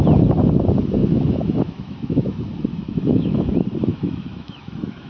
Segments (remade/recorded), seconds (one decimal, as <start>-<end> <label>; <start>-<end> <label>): 0.0-1.0 recorded; 1.0-2.4 remade; 2.4-2.8 recorded; 2.8-3.5 remade; 3.5-3.9 recorded; 3.9-5.1 remade